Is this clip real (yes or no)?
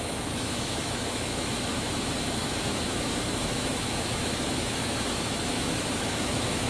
no